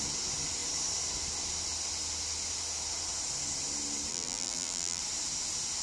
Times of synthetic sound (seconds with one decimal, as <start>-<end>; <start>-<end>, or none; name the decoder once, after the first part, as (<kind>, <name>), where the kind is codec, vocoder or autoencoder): 4.1-5.0 (vocoder, BigVGAN v2)